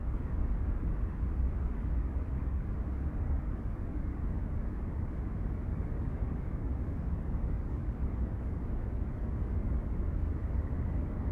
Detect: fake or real fake